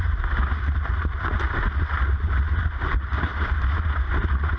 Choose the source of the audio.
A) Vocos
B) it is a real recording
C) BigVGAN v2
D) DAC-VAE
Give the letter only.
B